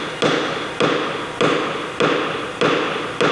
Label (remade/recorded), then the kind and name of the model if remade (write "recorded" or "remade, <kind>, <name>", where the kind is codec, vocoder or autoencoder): recorded